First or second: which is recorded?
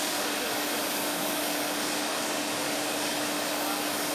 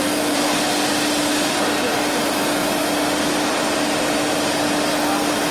second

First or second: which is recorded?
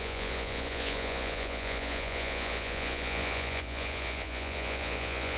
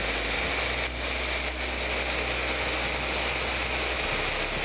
second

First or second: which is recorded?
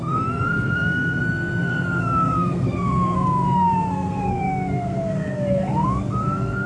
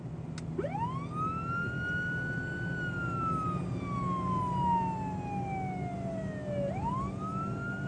second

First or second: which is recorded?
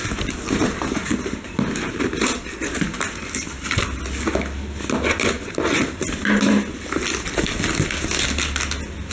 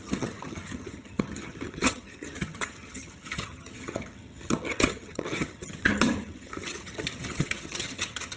first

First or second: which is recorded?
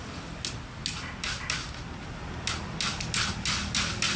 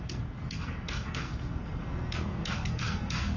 first